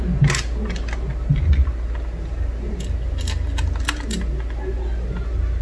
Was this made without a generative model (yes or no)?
yes